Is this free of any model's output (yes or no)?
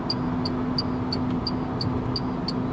yes